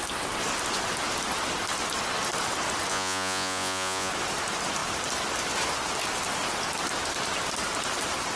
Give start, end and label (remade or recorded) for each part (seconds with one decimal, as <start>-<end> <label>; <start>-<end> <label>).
0.0-2.9 recorded; 2.9-4.1 remade; 4.1-8.4 recorded